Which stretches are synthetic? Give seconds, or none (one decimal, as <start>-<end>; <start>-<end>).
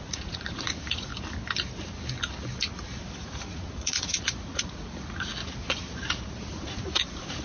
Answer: 0.0-1.1; 3.1-5.3; 6.5-7.4